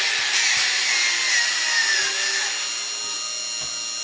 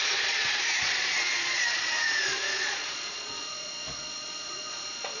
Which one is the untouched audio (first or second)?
first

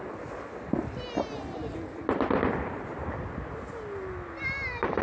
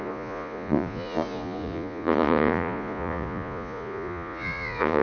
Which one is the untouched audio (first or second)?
first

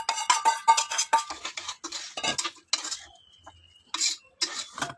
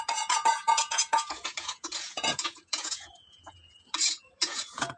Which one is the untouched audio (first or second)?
first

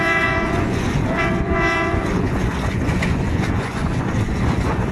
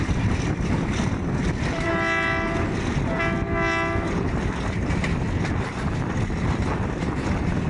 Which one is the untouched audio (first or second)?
second